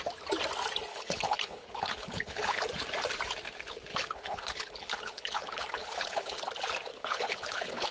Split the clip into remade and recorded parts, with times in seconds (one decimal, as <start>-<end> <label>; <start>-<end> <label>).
0.0-0.9 recorded; 0.9-2.6 remade; 2.6-3.9 recorded; 3.9-6.4 remade; 6.4-6.9 recorded; 6.9-7.9 remade

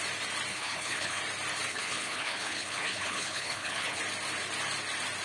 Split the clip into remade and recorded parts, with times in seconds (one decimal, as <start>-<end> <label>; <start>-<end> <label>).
0.0-0.5 recorded; 0.5-1.2 remade; 1.2-1.7 recorded; 1.7-4.0 remade; 4.0-5.2 recorded

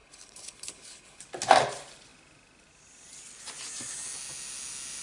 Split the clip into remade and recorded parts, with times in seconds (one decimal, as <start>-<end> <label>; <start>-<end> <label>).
0.0-1.2 remade; 1.2-5.0 recorded

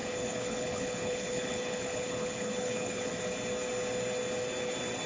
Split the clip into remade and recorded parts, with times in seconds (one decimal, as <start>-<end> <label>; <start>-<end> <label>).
0.0-3.1 remade; 3.1-5.1 recorded

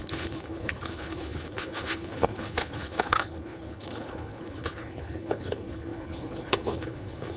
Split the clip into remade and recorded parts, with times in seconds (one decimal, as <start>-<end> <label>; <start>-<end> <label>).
0.0-7.4 remade